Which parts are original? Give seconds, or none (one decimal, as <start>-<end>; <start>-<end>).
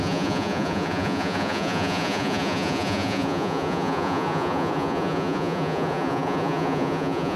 none